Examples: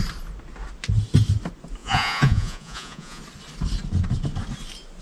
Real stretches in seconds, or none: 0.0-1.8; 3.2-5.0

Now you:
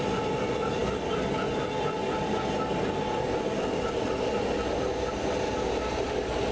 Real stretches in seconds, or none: 0.0-6.5

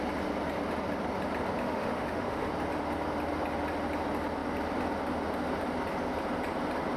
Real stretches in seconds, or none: 0.0-1.6; 2.5-7.0

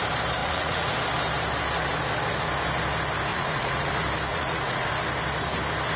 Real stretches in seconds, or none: 0.0-0.4; 0.9-3.3; 3.9-4.3; 4.9-6.0

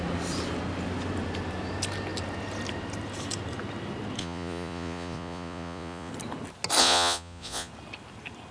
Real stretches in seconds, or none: 0.0-4.2; 6.1-6.8; 7.7-8.5

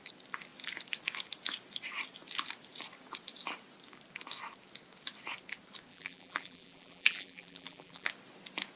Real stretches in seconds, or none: 0.0-5.9; 8.1-8.8

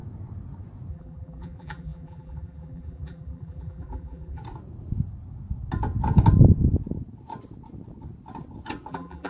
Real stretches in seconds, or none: 0.0-0.9; 4.4-8.9

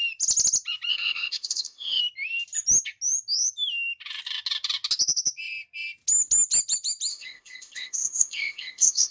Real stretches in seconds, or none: 0.0-0.9; 2.0-7.1